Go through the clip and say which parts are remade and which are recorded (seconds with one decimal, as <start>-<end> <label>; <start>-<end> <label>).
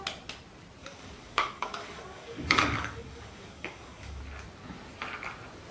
0.0-0.8 recorded; 0.8-4.2 remade; 4.2-5.7 recorded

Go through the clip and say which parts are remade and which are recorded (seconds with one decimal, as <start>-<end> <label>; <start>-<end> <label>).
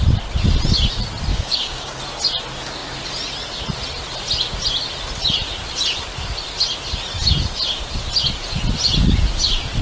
0.0-1.3 recorded; 1.3-2.0 remade; 2.0-9.8 recorded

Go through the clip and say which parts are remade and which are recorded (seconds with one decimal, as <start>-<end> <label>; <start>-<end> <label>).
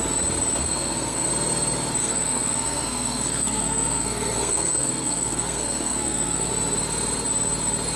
0.0-0.6 recorded; 0.6-1.3 remade; 1.3-2.0 recorded; 2.0-6.5 remade; 6.5-8.0 recorded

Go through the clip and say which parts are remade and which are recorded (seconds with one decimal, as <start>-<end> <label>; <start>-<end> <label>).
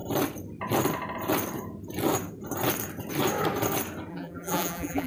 0.0-4.1 recorded; 4.1-5.1 remade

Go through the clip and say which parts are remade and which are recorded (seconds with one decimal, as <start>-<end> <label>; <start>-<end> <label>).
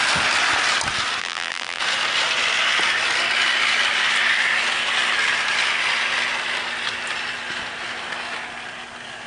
0.0-1.2 recorded; 1.2-1.8 remade; 1.8-9.3 recorded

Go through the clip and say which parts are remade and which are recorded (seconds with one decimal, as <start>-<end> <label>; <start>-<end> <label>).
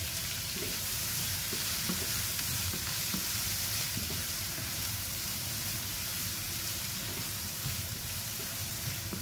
0.0-9.2 remade